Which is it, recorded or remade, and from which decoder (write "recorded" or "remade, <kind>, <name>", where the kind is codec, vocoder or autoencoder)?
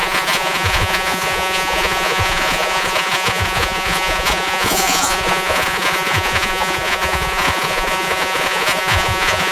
remade, vocoder, Vocos